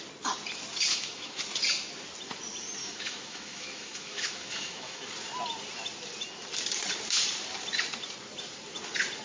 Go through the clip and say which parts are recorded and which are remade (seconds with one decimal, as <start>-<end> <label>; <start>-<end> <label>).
0.0-0.9 recorded; 0.9-1.4 remade; 1.4-2.8 recorded; 2.8-5.1 remade; 5.1-9.2 recorded